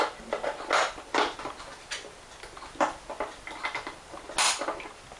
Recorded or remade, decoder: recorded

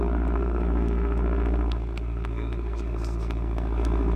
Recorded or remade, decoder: remade, codec, SNAC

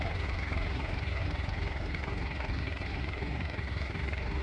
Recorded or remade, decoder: remade, codec, SNAC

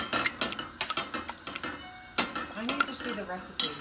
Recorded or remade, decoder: recorded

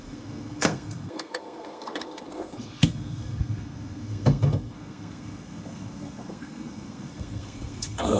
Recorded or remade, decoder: remade, codec, SNAC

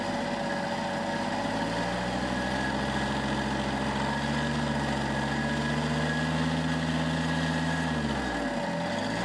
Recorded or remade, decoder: recorded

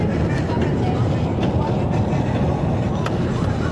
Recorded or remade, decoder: recorded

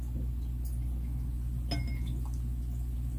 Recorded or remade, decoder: recorded